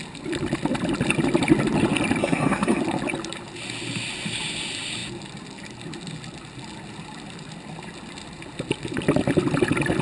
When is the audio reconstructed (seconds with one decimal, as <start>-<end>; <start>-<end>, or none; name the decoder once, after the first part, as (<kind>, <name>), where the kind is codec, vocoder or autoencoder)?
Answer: 2.2-2.8 (codec, SNAC)